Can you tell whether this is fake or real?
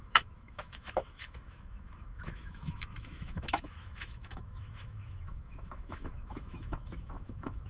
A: fake